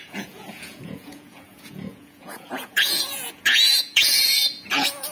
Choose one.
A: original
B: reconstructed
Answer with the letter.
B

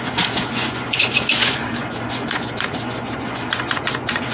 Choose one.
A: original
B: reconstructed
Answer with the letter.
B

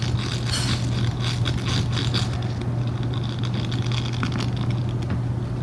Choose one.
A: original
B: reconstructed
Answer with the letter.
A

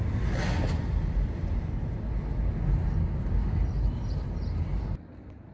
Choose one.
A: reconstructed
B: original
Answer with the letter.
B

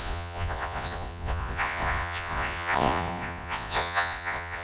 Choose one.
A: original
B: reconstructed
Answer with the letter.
B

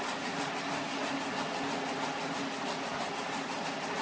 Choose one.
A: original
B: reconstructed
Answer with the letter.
A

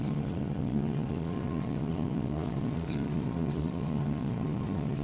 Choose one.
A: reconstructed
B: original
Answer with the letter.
A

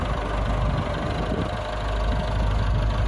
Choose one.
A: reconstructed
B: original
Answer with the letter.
B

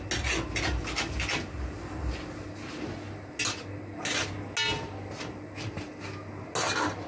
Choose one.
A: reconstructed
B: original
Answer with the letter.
B